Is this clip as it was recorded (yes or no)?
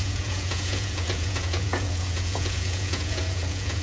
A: no